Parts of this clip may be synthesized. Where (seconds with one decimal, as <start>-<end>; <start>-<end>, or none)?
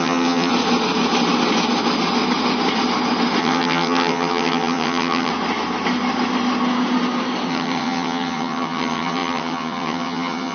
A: 0.0-0.5; 3.4-5.3; 7.5-10.5